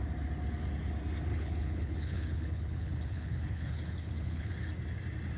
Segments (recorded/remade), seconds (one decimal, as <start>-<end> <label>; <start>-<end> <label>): 0.0-1.3 recorded; 1.3-4.5 remade; 4.5-5.4 recorded